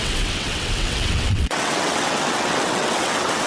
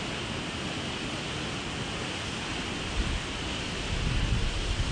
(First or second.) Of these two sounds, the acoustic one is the second